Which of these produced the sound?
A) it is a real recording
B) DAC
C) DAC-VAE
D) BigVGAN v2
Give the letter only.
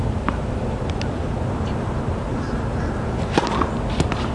A